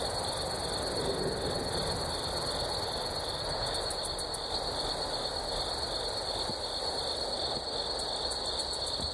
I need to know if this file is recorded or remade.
recorded